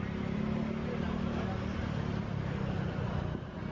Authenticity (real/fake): real